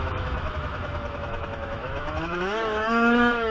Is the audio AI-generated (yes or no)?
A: yes